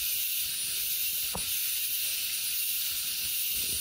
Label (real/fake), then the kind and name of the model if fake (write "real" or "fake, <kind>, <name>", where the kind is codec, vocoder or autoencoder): real